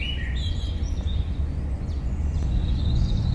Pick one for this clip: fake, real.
fake